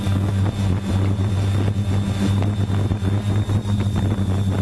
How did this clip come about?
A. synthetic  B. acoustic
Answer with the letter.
B